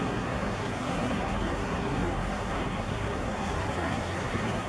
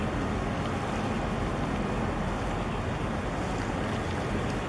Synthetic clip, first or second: first